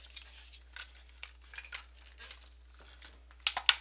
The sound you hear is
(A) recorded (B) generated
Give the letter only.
A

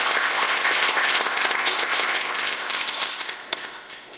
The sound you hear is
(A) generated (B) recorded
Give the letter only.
A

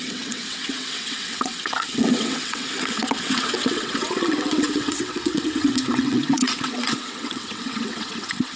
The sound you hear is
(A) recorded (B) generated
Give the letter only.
B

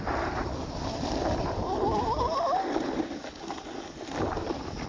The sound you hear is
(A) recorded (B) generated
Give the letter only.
A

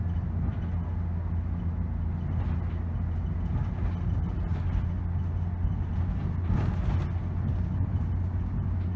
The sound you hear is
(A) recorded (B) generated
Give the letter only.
A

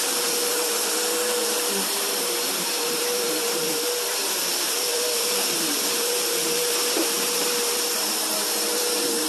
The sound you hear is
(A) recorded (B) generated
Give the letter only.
B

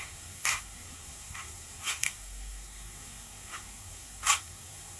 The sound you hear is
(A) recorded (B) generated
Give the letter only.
B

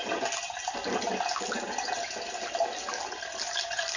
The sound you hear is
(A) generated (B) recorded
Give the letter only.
B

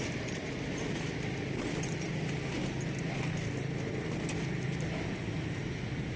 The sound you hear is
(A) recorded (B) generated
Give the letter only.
A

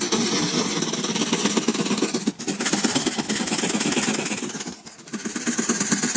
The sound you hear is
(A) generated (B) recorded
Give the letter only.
B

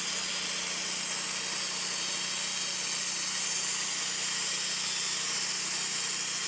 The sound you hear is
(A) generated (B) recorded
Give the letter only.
B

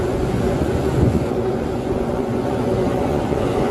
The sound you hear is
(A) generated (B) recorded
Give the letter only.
A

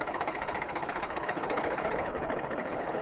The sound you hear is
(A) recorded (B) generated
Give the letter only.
B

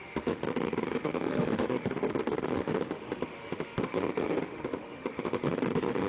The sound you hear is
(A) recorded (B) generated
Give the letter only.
B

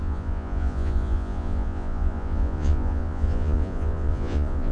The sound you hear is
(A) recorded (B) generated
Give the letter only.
B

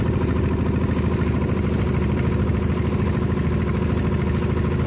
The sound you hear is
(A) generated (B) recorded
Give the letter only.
B